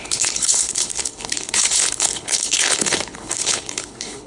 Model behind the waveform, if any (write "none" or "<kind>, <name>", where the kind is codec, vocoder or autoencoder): codec, HILCodec